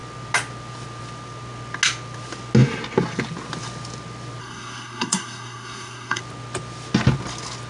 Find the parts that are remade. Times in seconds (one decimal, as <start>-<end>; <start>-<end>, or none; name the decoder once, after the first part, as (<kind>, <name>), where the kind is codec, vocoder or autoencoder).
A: 4.4-6.2 (codec, SNAC)